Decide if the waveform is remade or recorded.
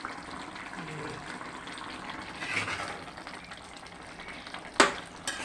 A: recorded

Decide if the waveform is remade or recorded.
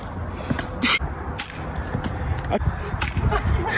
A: recorded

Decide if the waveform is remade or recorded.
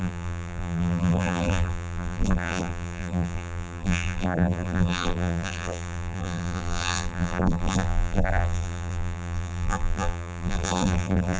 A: remade